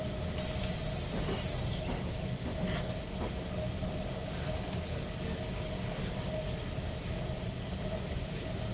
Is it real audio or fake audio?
real